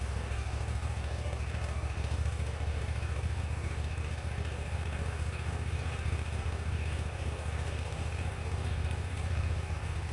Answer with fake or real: fake